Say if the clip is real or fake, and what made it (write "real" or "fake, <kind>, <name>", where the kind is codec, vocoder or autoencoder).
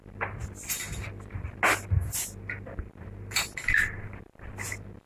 real